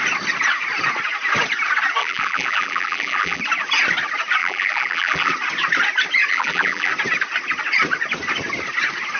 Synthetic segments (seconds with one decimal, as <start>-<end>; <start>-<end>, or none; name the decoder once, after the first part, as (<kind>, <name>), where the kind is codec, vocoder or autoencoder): 2.0-3.4 (vocoder, BigVGAN v2); 4.4-5.3; 6.3-6.9